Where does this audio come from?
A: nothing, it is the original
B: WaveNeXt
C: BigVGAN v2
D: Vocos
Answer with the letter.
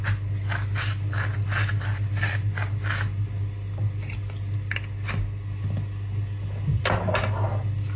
A